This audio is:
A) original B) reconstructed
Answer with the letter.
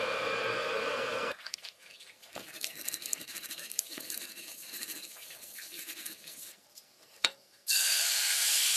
B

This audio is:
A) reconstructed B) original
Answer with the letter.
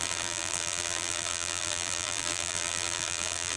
A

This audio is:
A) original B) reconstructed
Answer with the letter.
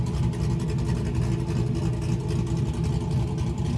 A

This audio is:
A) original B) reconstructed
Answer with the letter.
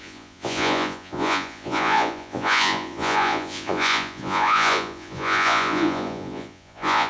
B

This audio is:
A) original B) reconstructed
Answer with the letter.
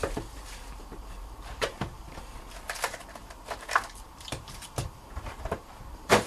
B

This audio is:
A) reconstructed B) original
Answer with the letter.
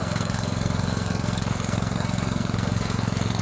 A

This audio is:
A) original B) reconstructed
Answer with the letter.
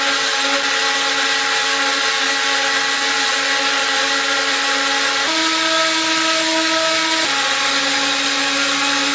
A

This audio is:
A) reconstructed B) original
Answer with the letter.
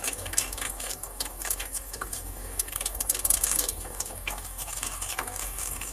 A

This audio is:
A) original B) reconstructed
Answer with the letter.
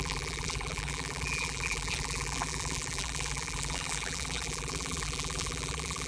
B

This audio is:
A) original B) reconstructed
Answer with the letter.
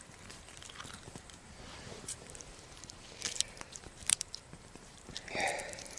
B